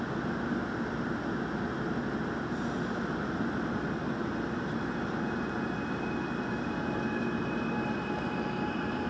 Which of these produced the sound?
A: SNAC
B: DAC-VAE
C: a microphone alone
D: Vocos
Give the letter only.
C